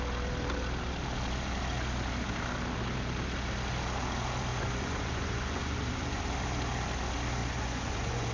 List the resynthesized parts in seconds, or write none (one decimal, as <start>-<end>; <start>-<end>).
4.5-6.2; 7.4-8.3